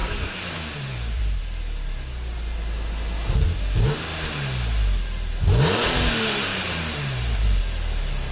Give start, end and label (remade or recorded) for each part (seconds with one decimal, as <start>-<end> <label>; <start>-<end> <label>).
0.0-1.4 remade; 1.4-6.5 recorded; 6.5-7.6 remade; 7.6-8.3 recorded